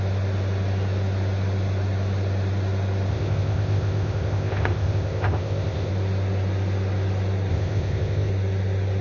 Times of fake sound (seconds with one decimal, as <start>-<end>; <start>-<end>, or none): 3.1-5.9; 7.5-8.3